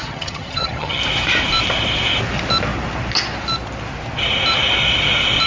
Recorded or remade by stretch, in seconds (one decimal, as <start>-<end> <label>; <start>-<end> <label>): 0.0-1.0 remade; 1.0-5.5 recorded